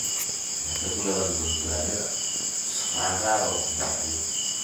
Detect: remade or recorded recorded